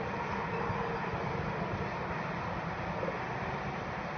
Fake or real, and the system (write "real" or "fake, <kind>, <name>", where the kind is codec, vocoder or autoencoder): real